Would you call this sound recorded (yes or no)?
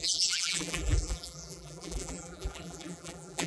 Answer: no